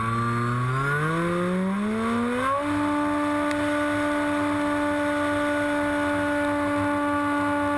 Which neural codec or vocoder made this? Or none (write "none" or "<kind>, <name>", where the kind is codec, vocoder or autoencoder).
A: none